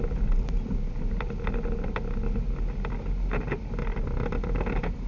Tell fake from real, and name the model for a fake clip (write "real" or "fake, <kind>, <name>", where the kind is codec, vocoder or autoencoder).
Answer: real